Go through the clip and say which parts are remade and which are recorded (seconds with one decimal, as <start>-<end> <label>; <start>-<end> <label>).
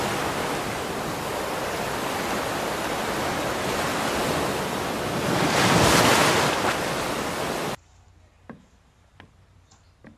0.0-10.2 recorded